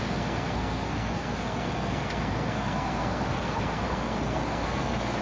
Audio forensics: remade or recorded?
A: remade